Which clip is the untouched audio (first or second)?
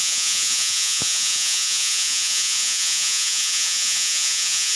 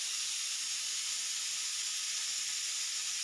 second